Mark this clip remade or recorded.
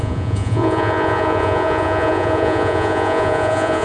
remade